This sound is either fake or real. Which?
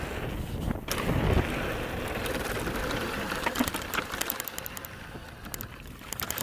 real